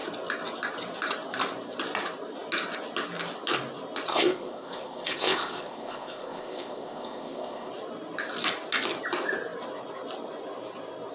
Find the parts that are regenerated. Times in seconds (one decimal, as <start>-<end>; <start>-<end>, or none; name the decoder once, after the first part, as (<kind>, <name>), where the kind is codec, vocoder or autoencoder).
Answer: 4.1-7.7 (codec, ZipCodec)